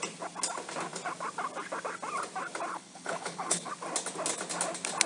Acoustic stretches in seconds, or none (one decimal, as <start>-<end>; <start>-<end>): 0.0-2.7; 3.7-5.1